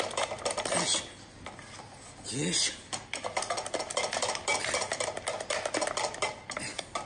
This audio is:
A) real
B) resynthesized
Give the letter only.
A